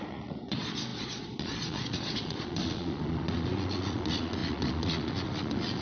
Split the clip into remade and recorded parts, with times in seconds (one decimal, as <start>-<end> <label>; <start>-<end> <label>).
0.0-5.8 remade